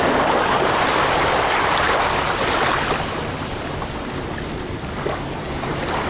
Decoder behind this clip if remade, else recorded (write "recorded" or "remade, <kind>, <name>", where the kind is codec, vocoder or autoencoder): recorded